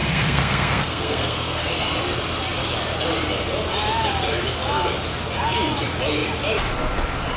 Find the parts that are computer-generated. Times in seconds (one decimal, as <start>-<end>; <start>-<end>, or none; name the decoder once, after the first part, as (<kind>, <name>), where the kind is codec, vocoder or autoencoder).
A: 0.0-1.8 (codec, SNAC)